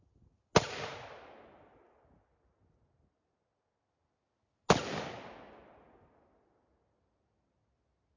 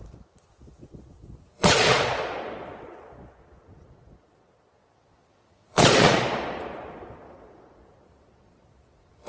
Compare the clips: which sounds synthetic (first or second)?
second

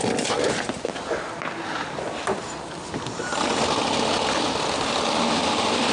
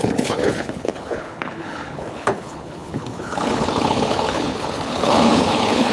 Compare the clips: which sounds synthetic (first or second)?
second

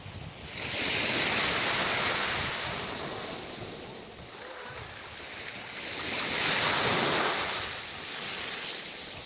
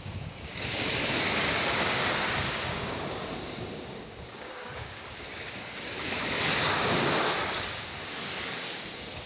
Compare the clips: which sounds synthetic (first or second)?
second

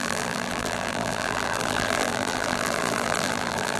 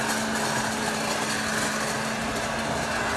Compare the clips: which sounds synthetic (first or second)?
first